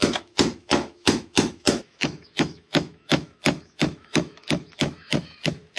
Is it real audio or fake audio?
fake